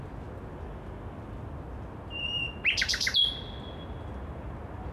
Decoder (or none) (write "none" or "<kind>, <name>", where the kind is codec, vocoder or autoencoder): none